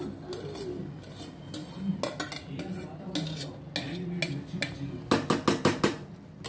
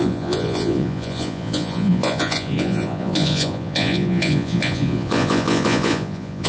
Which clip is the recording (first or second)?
first